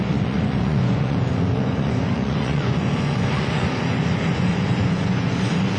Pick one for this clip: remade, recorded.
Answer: remade